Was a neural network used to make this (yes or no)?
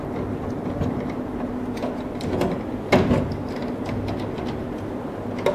no